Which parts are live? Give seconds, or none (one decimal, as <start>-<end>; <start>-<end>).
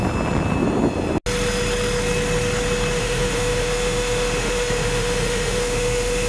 0.0-3.0